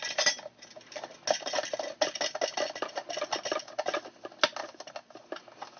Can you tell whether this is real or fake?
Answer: real